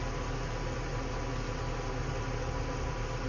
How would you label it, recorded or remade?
recorded